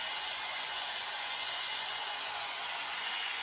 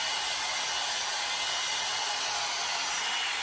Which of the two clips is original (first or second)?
second